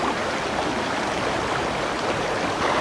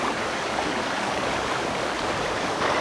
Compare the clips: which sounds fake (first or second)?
second